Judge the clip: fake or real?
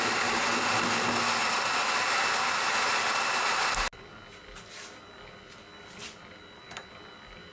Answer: real